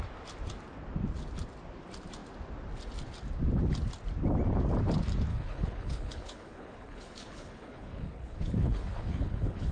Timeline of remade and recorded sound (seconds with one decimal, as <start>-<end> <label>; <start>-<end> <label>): 0.0-5.3 recorded; 5.3-9.7 remade